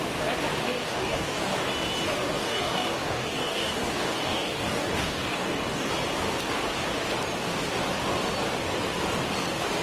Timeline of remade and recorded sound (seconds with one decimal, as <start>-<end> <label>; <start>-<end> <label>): 0.0-0.6 recorded; 0.6-1.7 remade; 1.7-2.2 recorded; 2.2-5.9 remade; 5.9-9.8 recorded